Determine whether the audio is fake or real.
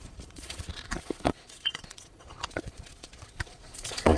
fake